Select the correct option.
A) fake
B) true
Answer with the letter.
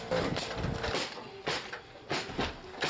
B